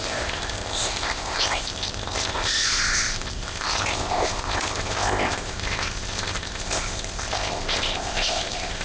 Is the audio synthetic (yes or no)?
yes